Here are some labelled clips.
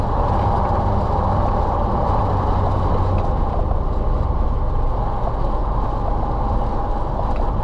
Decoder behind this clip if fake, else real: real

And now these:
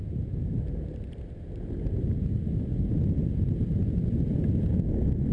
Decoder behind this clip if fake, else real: real